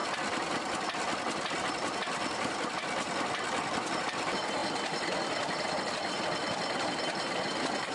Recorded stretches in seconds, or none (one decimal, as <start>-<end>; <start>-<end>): 0.0-7.9